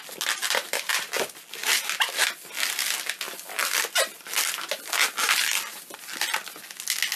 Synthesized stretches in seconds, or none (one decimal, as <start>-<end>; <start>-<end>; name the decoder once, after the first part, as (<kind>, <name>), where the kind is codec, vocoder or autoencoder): 0.4-0.9 (vocoder, BigVGAN v2)